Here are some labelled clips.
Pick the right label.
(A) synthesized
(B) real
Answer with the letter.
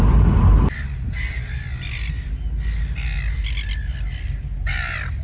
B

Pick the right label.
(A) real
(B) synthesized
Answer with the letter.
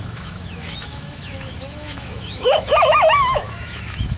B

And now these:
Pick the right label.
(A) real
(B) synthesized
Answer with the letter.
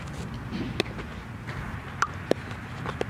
A